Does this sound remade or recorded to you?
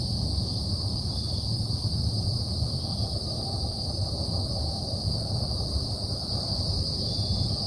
remade